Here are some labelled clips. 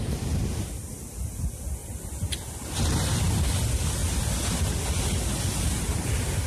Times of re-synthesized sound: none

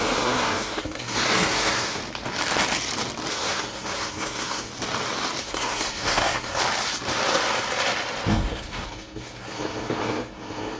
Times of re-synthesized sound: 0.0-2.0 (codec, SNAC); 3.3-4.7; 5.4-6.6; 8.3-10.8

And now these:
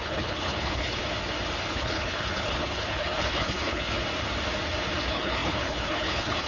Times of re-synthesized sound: 0.0-1.0 (codec, HILCodec); 1.7-4.0; 5.0-6.5

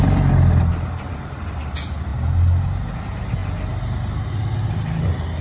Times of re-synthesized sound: none